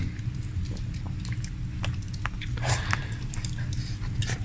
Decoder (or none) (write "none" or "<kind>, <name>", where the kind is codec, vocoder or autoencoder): none